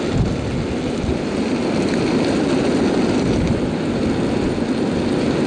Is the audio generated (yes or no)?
no